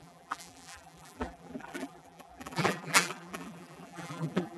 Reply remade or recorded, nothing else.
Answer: remade